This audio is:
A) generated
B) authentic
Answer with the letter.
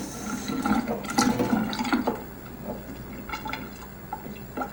B